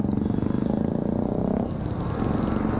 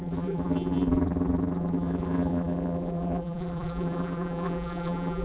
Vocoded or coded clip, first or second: second